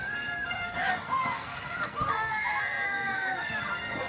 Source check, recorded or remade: remade